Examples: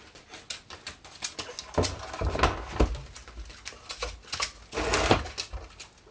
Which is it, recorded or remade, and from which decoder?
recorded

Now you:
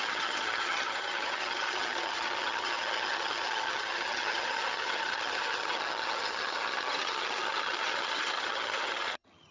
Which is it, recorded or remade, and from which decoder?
remade, vocoder, HiFi-GAN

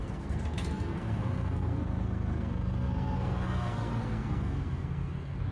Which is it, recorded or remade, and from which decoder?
remade, codec, SNAC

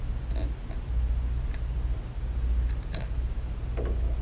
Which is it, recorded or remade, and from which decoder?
recorded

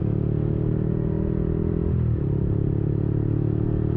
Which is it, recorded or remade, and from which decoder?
recorded